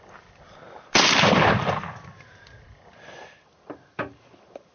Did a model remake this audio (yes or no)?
no